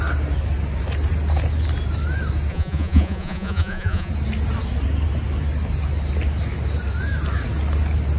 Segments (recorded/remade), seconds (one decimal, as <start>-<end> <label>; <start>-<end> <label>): 0.0-2.5 recorded; 2.5-4.1 remade; 4.1-8.2 recorded